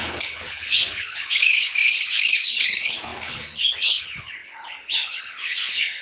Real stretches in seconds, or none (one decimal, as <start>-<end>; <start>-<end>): none